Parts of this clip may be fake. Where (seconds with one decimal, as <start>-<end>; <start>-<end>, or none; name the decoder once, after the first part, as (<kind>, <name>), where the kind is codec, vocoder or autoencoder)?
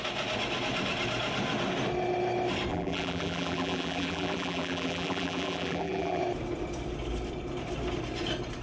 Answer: 2.7-6.2 (vocoder, BigVGAN v2)